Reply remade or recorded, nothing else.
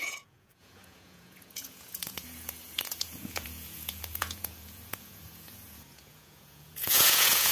remade